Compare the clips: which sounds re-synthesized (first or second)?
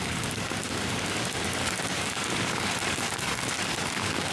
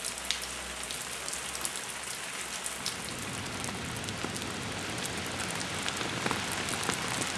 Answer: first